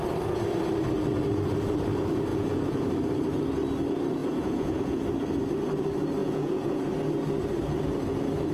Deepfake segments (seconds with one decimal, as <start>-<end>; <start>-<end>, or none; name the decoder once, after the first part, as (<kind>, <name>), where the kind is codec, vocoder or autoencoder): 2.3-2.9 (vocoder, Vocos); 4.2-5.0; 6.2-6.9